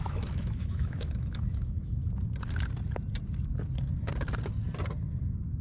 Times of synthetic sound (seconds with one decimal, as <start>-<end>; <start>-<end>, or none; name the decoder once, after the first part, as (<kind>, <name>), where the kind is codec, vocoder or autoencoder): 0.0-2.0 (autoencoder, DAC-VAE)